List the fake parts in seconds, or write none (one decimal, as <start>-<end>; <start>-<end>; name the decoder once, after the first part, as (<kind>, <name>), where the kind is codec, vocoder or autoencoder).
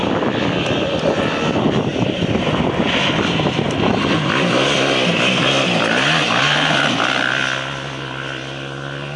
none